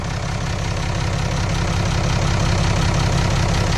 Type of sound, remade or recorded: recorded